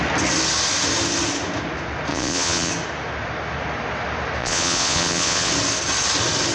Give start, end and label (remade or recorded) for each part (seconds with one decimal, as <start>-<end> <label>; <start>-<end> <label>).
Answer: 0.0-2.1 recorded; 2.1-2.7 remade; 2.7-4.4 recorded; 4.4-5.5 remade; 5.5-6.5 recorded